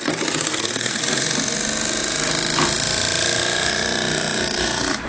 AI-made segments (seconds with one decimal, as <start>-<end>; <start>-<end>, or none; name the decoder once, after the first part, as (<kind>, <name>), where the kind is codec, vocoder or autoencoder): 0.5-1.0 (codec, SNAC)